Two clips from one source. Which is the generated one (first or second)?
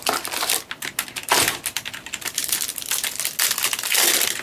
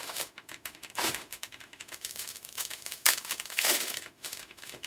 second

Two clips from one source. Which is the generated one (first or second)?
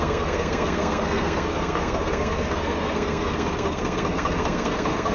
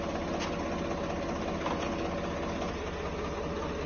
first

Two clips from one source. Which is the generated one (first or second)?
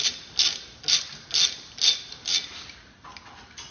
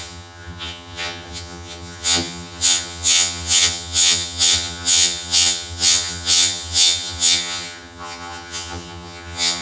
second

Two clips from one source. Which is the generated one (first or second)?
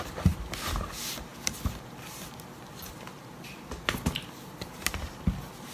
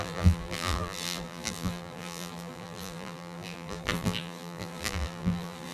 second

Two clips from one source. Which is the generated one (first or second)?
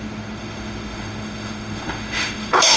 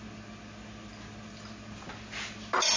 first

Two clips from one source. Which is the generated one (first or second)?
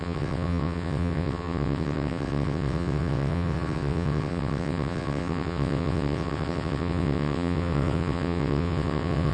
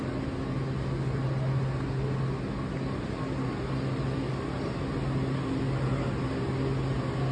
first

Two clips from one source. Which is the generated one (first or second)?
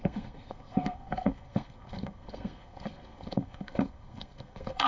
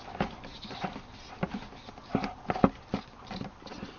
first